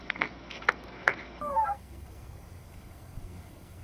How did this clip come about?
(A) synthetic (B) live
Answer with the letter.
A